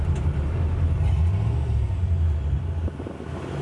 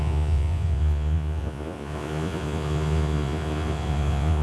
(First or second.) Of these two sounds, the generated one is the second